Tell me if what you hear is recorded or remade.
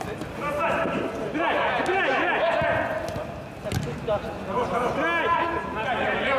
recorded